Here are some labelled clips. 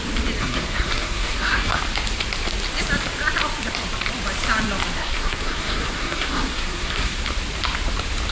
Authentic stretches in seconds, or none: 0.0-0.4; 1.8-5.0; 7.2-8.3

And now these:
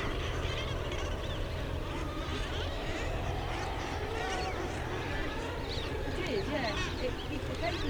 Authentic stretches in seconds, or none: none

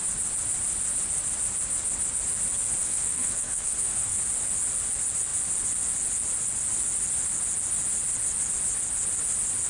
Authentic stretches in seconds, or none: 0.0-2.8; 4.2-9.7